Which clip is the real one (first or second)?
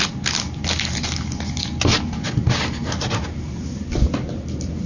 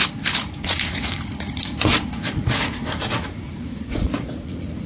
first